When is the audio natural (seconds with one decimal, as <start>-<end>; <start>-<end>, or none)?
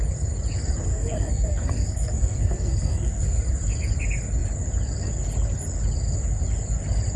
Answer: 0.0-0.9; 3.4-7.2